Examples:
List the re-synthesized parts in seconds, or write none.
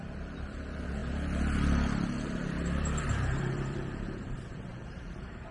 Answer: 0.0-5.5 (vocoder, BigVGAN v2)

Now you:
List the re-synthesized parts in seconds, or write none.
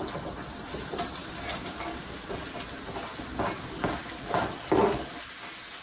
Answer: 1.2-2.2 (codec, DAC)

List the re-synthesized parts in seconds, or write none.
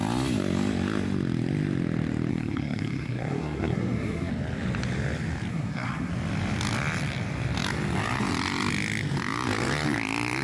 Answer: 2.3-4.3 (codec, SNAC); 5.5-6.1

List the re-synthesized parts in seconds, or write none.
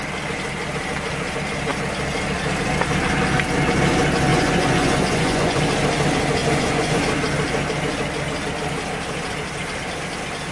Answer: 4.3-5.6 (vocoder, Vocos); 6.4-7.0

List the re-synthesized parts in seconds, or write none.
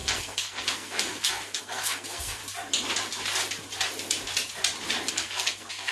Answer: 0.0-2.4 (codec, SNAC); 5.1-5.9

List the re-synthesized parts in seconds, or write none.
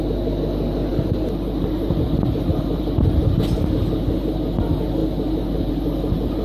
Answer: 0.9-2.8 (vocoder, BigVGAN v2)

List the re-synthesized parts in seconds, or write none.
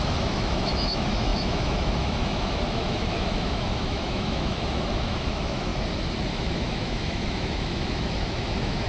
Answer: 0.0-5.7 (autoencoder, DAC-VAE); 6.3-8.9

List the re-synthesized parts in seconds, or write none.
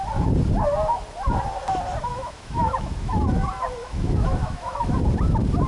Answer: 2.1-3.1 (autoencoder, DAC-VAE); 3.8-5.0